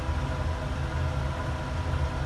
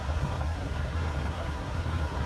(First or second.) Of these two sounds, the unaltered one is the first